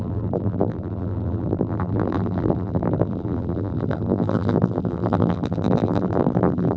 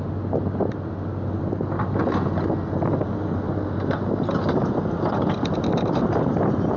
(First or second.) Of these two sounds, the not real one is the first